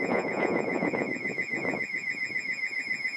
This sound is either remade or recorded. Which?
remade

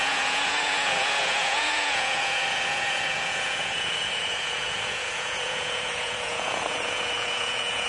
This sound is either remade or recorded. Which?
remade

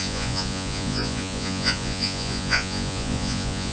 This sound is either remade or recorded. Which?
remade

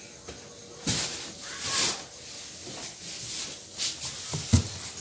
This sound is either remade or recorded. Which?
recorded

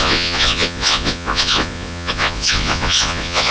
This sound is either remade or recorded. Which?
remade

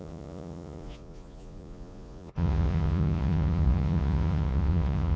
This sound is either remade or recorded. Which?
remade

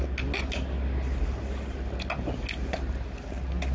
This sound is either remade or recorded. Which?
recorded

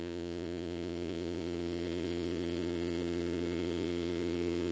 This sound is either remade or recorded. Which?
remade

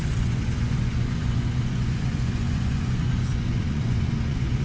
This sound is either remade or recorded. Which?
remade